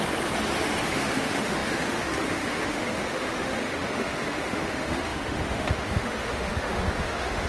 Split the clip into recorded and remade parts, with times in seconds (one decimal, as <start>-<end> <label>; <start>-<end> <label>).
0.0-0.8 recorded; 0.8-7.5 remade